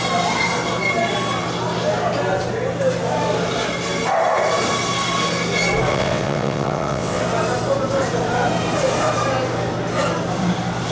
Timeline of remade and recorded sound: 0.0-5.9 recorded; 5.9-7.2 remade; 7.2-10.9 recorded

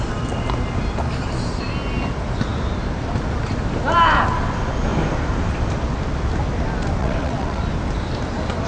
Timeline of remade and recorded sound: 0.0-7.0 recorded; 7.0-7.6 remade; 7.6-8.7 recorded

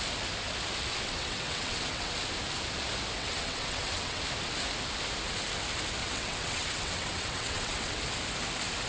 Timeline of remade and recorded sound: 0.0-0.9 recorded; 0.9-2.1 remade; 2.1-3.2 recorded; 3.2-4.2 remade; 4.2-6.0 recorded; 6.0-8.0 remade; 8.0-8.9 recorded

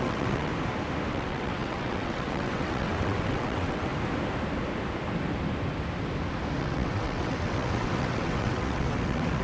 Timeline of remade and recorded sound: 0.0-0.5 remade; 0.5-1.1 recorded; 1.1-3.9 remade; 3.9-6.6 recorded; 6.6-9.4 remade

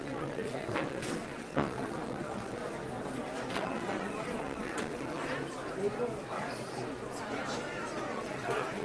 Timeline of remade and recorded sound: 0.0-2.6 remade; 2.6-3.5 recorded; 3.5-5.2 remade; 5.2-8.1 recorded; 8.1-8.8 remade